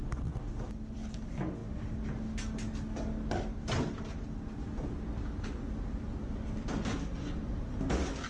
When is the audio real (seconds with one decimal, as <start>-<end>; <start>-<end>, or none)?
0.0-8.3